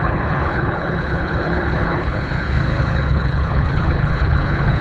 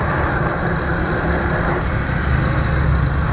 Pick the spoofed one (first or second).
first